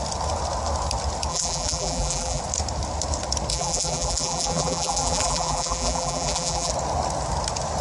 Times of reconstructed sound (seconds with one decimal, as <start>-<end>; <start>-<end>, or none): 1.3-2.4; 3.5-6.7